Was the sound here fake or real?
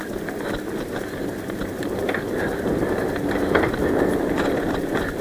real